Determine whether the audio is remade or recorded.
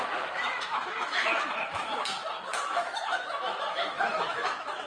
remade